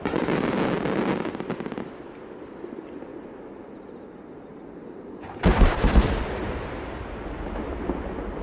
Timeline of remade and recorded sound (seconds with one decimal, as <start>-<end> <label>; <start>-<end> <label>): 0.0-3.1 recorded; 3.1-6.2 remade; 6.2-8.4 recorded